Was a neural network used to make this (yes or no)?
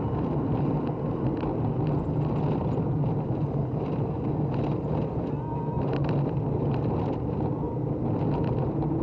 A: no